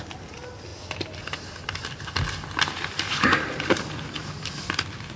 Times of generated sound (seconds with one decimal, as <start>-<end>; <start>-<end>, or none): 1.8-4.2